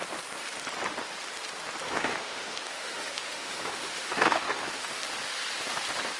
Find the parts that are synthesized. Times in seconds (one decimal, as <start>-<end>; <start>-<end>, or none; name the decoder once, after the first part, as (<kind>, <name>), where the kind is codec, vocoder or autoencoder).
1.8-5.0 (autoencoder, DAC-VAE)